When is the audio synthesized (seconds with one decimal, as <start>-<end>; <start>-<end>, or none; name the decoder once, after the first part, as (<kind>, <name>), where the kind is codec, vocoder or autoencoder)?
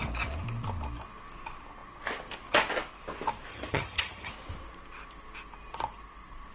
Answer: 3.5-4.3 (vocoder, HiFi-GAN)